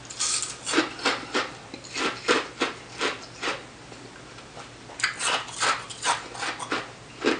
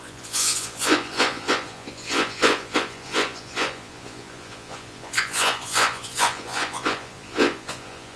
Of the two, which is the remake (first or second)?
second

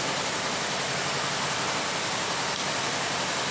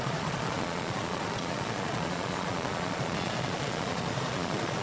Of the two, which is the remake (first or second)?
second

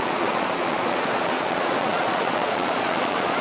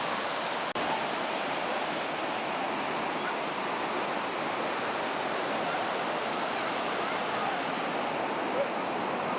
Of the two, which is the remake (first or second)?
first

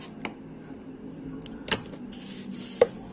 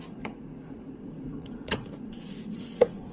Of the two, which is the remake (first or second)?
second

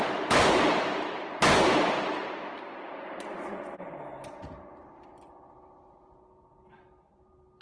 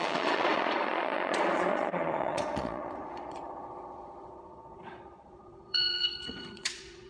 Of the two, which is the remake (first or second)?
second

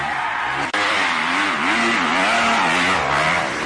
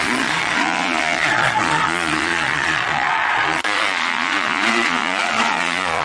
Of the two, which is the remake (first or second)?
second